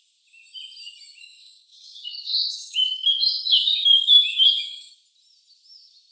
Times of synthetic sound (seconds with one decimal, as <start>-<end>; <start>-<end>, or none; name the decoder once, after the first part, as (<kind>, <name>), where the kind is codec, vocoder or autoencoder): 1.2-4.9 (codec, DAC)